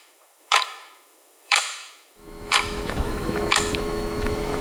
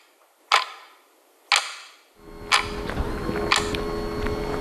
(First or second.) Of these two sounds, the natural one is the second